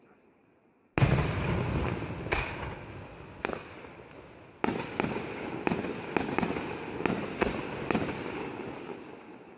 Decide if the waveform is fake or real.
real